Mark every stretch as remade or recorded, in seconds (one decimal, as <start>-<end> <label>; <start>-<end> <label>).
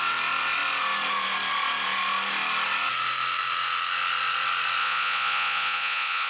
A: 0.0-4.8 recorded; 4.8-6.3 remade